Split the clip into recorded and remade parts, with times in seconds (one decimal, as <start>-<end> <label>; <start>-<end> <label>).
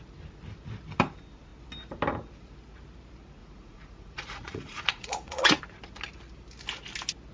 0.0-3.4 recorded; 3.4-5.6 remade; 5.6-7.3 recorded